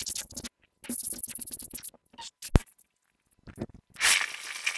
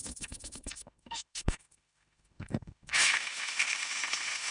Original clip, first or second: first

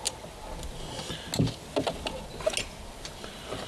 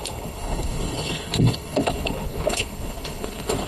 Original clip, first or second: first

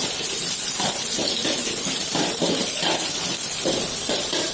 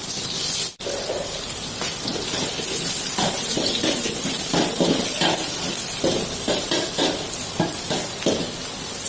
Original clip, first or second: second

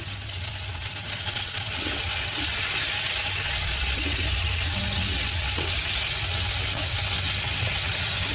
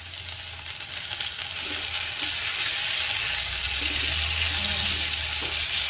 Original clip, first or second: second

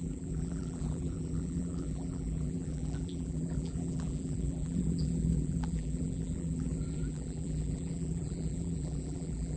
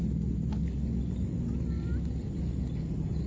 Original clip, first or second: second